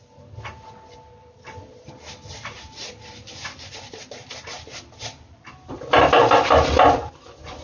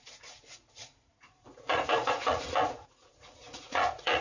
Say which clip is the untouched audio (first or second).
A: first